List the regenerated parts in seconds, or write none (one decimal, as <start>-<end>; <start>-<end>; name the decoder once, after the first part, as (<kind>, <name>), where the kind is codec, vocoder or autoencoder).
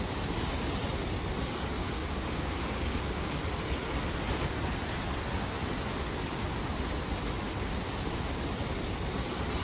1.8-3.4 (codec, DAC)